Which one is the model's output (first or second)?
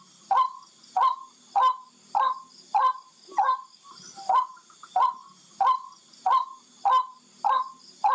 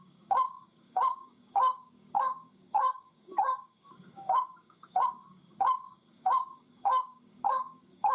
second